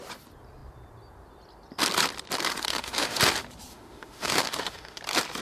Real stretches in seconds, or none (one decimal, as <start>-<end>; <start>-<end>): 0.0-2.7; 3.2-3.7; 5.0-5.4

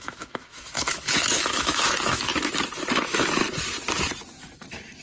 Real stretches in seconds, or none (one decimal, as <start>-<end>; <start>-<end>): 2.3-2.9; 3.4-4.4